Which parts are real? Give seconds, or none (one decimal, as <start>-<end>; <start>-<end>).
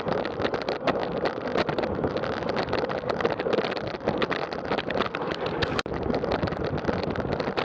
0.0-7.6